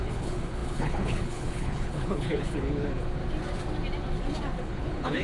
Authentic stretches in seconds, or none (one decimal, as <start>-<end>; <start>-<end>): 3.2-4.6